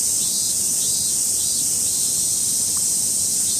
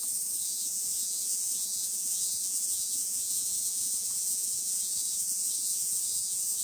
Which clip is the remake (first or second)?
second